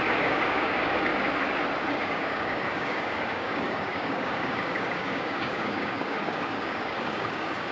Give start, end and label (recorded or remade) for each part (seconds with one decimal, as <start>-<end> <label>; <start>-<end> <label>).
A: 0.0-1.1 remade; 1.1-1.9 recorded; 1.9-7.7 remade